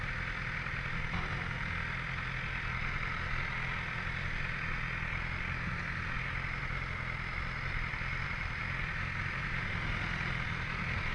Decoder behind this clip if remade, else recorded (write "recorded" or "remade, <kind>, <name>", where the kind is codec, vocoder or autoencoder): recorded